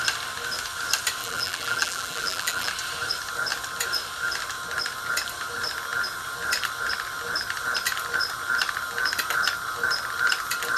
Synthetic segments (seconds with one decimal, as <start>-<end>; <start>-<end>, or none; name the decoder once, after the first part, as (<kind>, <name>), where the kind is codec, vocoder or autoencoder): 1.2-2.7 (vocoder, BigVGAN v2)